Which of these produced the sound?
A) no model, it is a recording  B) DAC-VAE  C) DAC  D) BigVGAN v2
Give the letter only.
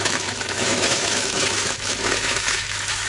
B